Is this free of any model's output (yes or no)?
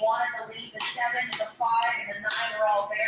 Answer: yes